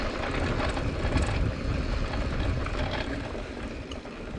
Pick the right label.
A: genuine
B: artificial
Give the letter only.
A